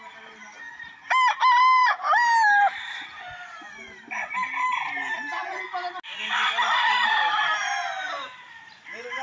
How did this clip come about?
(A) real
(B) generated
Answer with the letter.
A